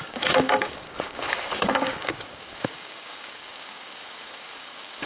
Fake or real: fake